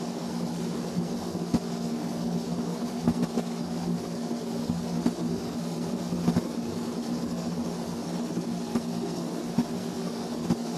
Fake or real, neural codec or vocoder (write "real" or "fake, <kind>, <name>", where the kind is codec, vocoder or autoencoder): fake, codec, SNAC